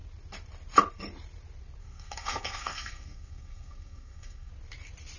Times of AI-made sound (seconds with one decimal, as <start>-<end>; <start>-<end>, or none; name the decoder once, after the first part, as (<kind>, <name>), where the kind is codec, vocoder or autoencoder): 1.8-4.5 (codec, SNAC)